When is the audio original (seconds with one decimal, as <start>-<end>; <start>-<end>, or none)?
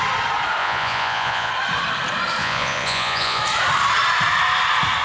0.0-0.6; 1.5-2.4; 3.4-5.0